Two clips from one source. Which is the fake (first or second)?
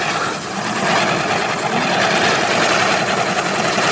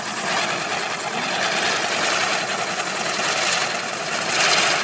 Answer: first